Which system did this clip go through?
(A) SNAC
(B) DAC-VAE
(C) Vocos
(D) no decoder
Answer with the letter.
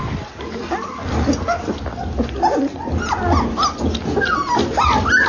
D